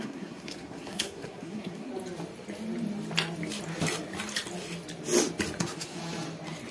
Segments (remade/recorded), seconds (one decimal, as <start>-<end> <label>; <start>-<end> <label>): 0.0-1.9 remade; 1.9-5.6 recorded; 5.6-6.0 remade; 6.0-6.7 recorded